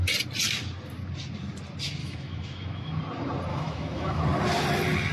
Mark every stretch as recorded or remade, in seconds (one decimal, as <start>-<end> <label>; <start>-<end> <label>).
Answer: 0.0-2.0 recorded; 2.0-3.0 remade; 3.0-3.5 recorded; 3.5-4.2 remade; 4.2-5.1 recorded